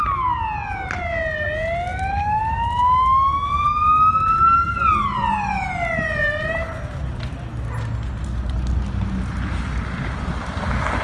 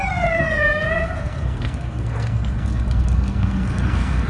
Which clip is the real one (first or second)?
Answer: first